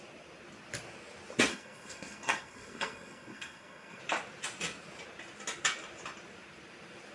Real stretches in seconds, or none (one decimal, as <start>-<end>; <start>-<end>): 0.0-1.5; 4.0-7.1

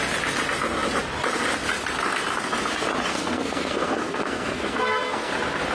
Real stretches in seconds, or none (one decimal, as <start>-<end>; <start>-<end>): 0.0-3.1; 5.3-5.7

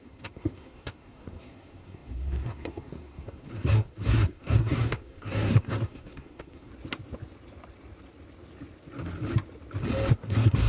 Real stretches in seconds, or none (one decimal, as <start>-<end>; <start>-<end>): 6.7-10.1

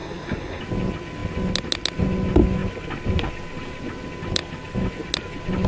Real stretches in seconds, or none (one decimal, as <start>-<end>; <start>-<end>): 0.6-5.7